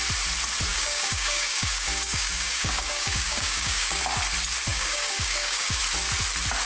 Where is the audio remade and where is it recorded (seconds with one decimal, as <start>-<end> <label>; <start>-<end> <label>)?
0.0-0.7 recorded; 0.7-4.0 remade; 4.0-4.7 recorded; 4.7-5.8 remade; 5.8-6.7 recorded